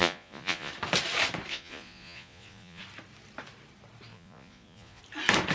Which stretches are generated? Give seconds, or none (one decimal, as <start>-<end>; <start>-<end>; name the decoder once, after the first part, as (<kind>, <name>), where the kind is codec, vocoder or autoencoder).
0.0-0.7 (vocoder, Vocos); 1.5-2.8; 4.1-5.0

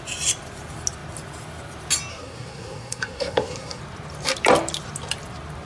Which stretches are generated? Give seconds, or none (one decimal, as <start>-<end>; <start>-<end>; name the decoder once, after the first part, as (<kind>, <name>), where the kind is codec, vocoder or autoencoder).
2.1-3.8 (codec, SNAC)

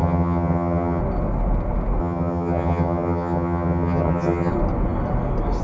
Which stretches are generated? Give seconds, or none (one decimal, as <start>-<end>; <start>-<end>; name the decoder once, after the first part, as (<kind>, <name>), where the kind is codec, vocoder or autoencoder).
0.0-1.0 (vocoder, HiFi-GAN); 2.0-4.5